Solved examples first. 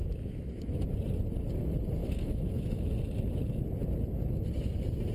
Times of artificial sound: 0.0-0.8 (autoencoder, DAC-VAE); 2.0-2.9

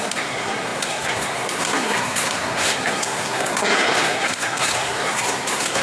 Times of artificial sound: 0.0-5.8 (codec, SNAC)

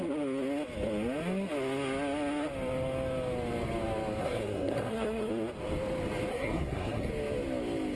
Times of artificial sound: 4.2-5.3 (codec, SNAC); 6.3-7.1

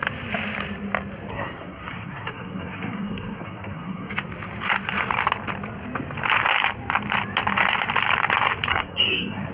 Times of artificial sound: 1.3-4.1 (codec, SNAC); 8.7-9.5

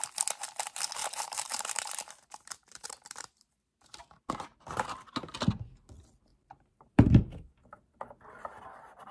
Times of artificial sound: 1.0-4.3 (vocoder, BigVGAN v2); 6.3-7.5

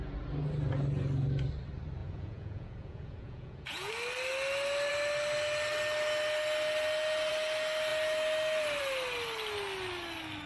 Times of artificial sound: 2.0-3.9 (vocoder, Vocos)

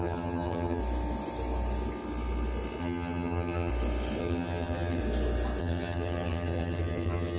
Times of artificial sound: 0.0-0.8 (vocoder, HiFi-GAN); 2.8-3.7; 4.2-5.0; 5.6-7.4